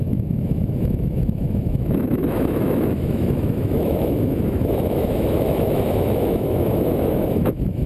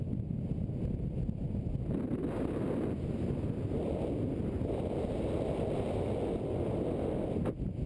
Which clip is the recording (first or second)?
second